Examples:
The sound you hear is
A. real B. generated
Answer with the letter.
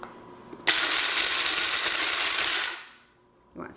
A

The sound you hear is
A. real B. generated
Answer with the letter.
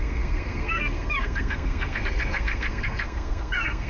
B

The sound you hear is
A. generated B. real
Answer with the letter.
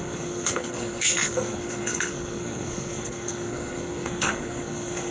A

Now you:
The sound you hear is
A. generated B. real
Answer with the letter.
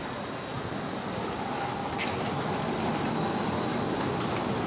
B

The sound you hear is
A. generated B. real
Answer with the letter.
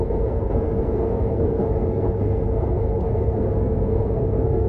A